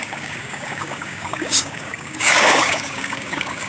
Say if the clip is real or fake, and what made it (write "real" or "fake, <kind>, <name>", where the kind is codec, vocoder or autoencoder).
fake, codec, DAC